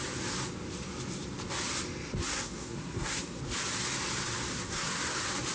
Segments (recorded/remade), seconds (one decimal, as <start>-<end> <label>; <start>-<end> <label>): 0.0-2.2 recorded; 2.2-3.4 remade; 3.4-4.5 recorded; 4.5-5.0 remade; 5.0-5.5 recorded